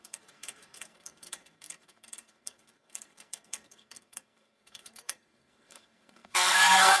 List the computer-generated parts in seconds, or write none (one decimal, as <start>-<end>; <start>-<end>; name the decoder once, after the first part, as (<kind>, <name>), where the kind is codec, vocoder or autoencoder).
0.0-7.0 (codec, SNAC)